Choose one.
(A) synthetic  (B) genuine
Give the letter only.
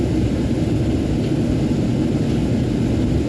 B